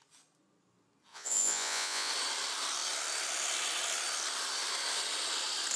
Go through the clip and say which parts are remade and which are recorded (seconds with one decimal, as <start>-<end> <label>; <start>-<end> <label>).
0.0-1.1 recorded; 1.1-2.1 remade; 2.1-5.8 recorded